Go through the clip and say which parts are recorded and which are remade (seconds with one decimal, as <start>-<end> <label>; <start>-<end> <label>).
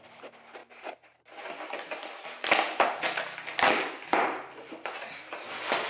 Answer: 0.0-0.6 recorded; 0.6-1.2 remade; 1.2-5.9 recorded